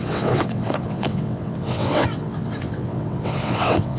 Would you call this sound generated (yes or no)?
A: yes